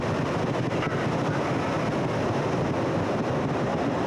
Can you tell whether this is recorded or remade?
recorded